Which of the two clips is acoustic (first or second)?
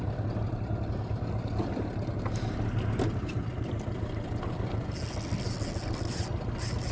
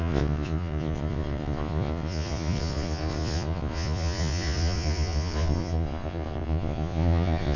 first